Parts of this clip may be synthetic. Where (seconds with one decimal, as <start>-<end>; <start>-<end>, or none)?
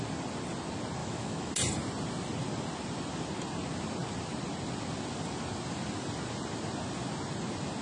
1.0-1.5